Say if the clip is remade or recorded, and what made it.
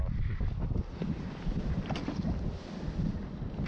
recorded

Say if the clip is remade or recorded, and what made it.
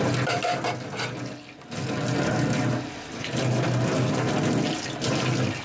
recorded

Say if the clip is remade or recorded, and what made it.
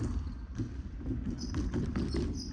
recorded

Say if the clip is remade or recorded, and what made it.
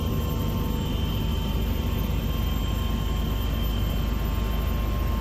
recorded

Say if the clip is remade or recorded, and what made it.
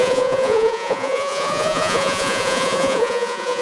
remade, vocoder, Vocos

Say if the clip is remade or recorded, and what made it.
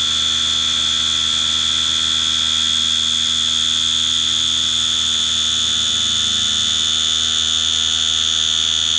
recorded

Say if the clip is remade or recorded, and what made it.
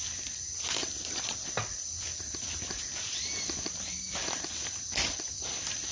recorded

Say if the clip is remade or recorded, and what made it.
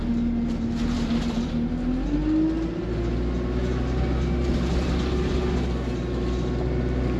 recorded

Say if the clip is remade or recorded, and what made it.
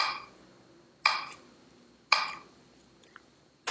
recorded